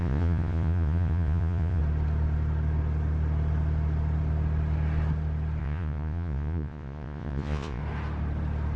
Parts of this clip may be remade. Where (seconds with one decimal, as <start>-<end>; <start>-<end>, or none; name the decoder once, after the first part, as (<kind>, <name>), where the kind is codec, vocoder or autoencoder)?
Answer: 0.0-1.8 (vocoder, Vocos); 5.6-7.8